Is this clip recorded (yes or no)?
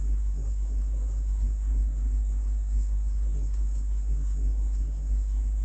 no